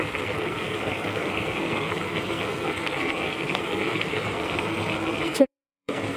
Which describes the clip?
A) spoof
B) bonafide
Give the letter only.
A